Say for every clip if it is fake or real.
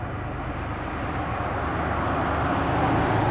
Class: real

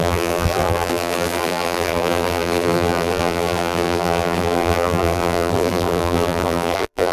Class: fake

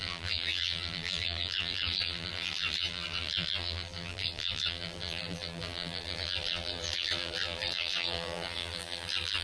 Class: fake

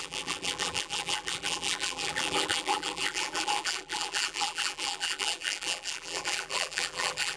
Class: fake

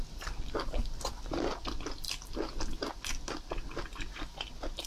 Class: real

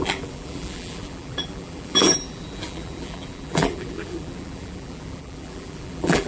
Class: fake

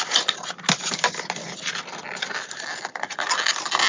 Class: real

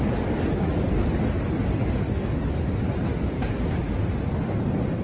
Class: real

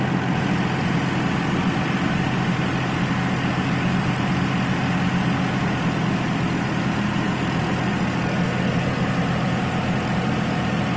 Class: real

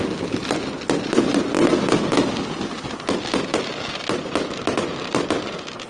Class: real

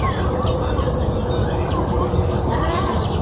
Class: real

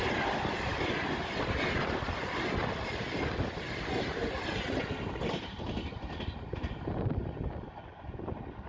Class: real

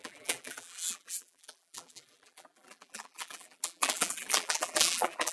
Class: fake